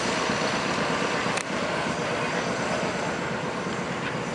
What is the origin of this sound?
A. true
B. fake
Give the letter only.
A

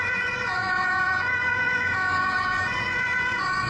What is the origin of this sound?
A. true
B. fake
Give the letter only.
B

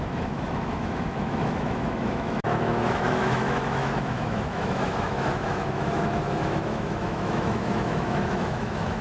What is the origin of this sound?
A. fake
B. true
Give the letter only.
A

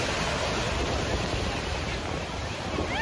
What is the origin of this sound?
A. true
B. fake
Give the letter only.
A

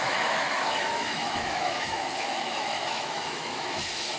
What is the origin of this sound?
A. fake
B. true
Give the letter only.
A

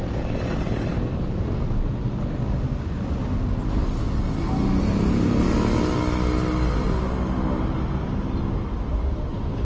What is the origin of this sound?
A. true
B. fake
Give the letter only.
A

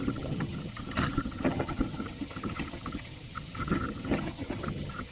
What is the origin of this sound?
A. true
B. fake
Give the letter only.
B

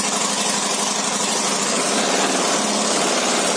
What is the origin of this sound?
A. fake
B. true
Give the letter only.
B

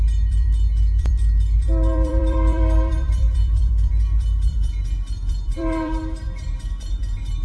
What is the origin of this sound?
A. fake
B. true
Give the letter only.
A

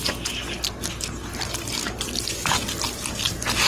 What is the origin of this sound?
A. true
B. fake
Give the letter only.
A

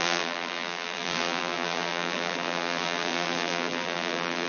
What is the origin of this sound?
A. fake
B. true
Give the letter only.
A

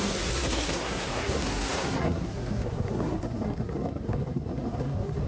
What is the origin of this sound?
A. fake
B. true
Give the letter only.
A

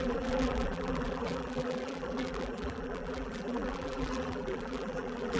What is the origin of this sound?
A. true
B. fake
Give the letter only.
B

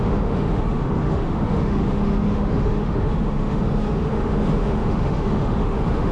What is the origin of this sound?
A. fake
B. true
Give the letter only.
A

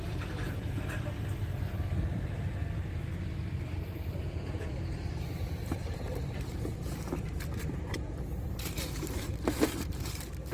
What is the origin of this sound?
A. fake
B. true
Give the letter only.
A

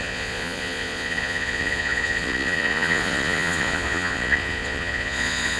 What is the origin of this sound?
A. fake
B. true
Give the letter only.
A